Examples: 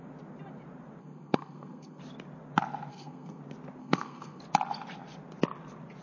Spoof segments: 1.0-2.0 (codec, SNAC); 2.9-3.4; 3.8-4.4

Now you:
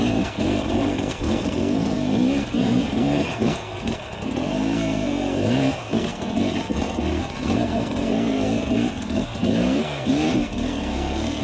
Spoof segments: 0.0-11.4 (codec, SNAC)

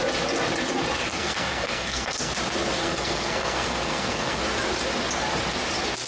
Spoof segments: 1.1-2.3 (codec, SNAC); 2.8-4.4

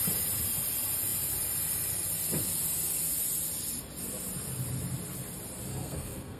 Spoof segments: 5.7-6.4 (codec, SNAC)

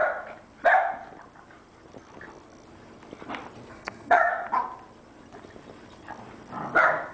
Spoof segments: 3.7-4.3 (codec, SNAC)

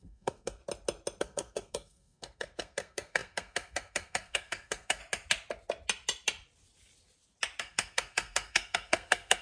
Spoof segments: 0.0-0.6 (codec, SNAC); 1.2-5.0; 7.6-9.4